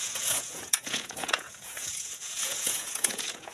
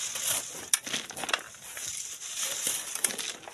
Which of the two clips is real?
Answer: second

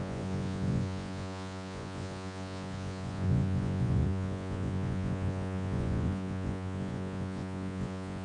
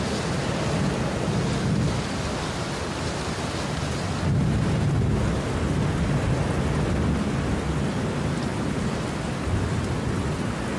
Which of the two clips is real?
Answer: second